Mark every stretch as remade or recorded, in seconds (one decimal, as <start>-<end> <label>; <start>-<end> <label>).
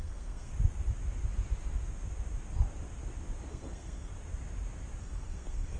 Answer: 0.0-0.5 remade; 0.5-3.5 recorded; 3.5-4.1 remade; 4.1-5.0 recorded; 5.0-5.8 remade